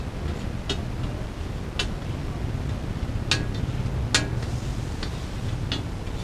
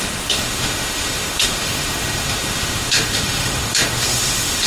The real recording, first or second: first